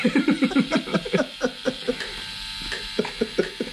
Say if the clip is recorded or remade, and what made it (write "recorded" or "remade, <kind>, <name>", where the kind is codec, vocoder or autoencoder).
recorded